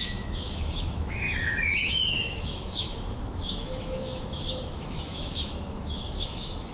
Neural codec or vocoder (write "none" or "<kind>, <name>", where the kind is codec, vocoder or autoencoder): autoencoder, DAC-VAE